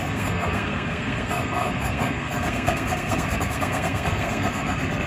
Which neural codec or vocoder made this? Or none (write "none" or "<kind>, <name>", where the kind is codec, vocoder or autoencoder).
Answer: codec, SNAC